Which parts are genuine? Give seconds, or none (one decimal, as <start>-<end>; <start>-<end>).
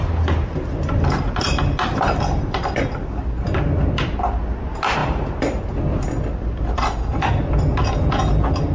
0.0-8.7